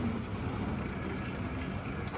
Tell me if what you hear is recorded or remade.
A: recorded